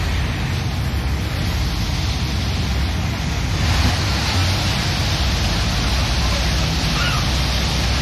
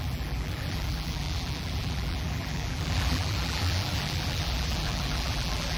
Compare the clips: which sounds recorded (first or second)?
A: first